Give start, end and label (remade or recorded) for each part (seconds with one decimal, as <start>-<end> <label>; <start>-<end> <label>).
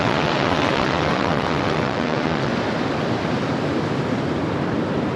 0.0-2.5 remade; 2.5-5.2 recorded